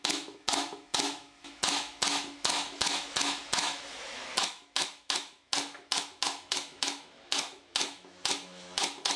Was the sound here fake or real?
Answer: fake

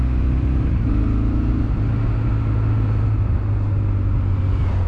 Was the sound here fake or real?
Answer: real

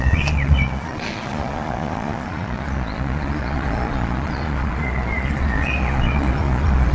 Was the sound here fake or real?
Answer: fake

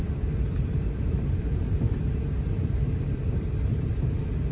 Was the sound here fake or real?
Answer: fake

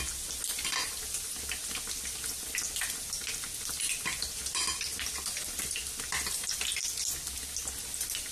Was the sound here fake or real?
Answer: real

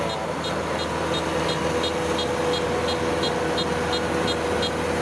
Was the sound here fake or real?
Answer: real